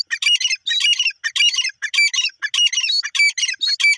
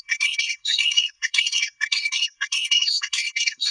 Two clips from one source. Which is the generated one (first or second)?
second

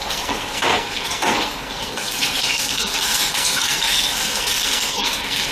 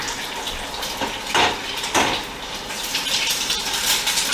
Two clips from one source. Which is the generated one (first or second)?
first